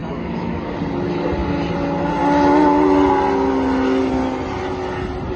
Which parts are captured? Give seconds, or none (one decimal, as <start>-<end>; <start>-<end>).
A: 0.8-5.4